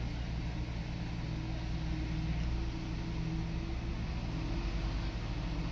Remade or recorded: recorded